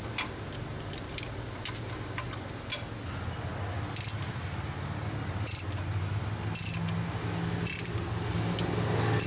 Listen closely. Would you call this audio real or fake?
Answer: real